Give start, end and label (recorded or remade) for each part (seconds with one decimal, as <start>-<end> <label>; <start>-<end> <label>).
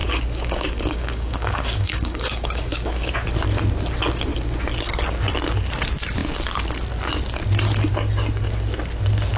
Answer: 0.0-3.1 remade; 3.1-9.4 recorded